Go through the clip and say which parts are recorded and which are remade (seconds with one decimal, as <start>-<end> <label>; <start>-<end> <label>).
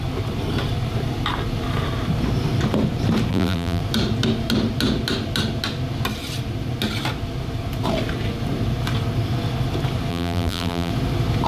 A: 0.0-3.3 recorded; 3.3-3.8 remade; 3.8-10.1 recorded; 10.1-10.9 remade; 10.9-11.5 recorded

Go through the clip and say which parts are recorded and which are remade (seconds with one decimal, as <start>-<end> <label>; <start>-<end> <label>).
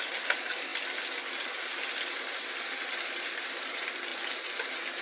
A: 0.0-0.7 remade; 0.7-3.1 recorded; 3.1-4.1 remade; 4.1-5.0 recorded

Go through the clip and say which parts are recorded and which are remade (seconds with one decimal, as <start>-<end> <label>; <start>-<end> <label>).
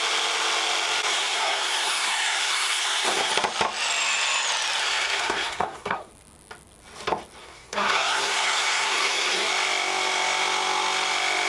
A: 0.0-1.1 recorded; 1.1-3.3 remade; 3.3-4.8 recorded; 4.8-6.1 remade; 6.1-7.4 recorded; 7.4-9.5 remade; 9.5-11.5 recorded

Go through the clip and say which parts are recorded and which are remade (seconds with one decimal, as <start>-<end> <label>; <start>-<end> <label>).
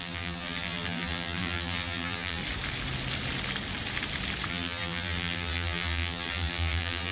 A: 0.0-2.4 remade; 2.4-4.5 recorded; 4.5-7.1 remade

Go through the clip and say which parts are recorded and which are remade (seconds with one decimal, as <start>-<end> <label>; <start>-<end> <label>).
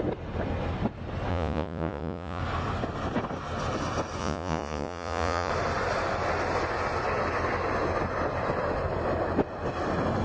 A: 0.0-1.3 recorded; 1.3-2.4 remade; 2.4-4.2 recorded; 4.2-5.5 remade; 5.5-10.2 recorded